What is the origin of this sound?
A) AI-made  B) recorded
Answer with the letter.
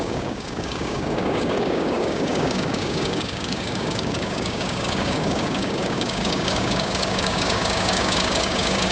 A